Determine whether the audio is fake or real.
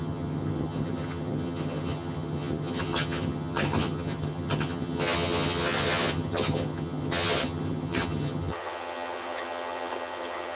fake